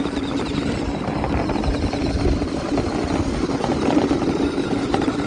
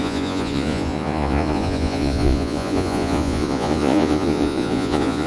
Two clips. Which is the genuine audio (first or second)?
first